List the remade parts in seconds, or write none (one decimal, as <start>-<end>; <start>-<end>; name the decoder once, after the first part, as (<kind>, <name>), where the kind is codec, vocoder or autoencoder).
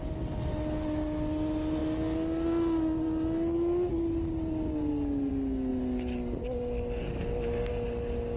none